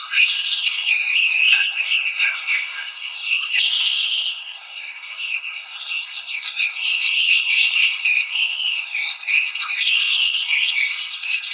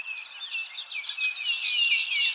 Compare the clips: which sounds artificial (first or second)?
first